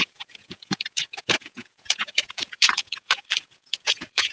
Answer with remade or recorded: remade